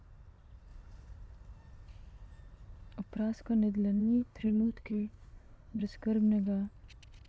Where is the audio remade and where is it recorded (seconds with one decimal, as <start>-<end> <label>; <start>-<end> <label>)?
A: 0.0-4.0 recorded; 4.0-5.8 remade; 5.8-7.3 recorded